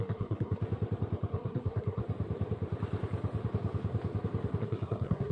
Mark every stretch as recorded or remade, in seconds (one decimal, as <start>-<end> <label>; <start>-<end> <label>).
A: 0.0-0.6 remade; 0.6-1.3 recorded; 1.3-2.0 remade; 2.0-4.6 recorded; 4.6-5.3 remade